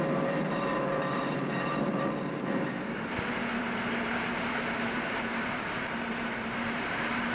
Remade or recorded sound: remade